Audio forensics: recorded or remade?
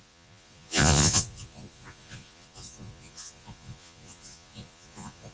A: remade